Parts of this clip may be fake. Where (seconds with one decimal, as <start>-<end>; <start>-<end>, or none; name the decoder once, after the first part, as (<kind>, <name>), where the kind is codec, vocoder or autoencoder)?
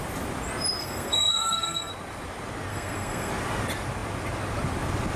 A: 0.8-1.9 (codec, SNAC); 2.7-3.3